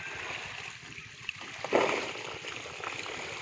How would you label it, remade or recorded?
recorded